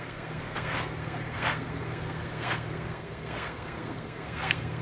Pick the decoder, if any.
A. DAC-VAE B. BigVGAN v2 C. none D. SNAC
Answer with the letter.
D